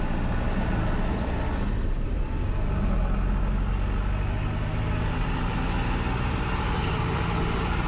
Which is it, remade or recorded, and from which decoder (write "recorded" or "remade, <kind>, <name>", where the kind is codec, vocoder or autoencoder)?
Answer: recorded